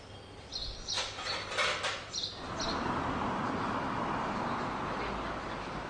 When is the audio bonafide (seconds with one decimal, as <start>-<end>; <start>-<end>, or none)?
0.0-5.9